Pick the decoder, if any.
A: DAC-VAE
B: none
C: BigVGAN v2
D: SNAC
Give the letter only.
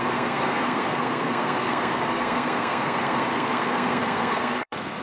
D